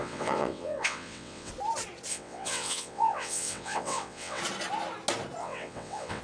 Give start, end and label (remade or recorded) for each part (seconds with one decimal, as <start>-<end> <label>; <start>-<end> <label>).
0.0-1.5 remade; 1.5-2.1 recorded; 2.1-4.4 remade; 4.4-5.4 recorded; 5.4-6.2 remade